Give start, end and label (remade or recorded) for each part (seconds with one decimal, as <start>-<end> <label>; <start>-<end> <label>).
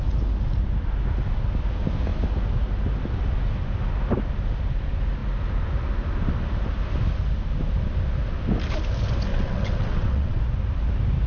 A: 0.0-9.3 recorded; 9.3-10.4 remade; 10.4-11.3 recorded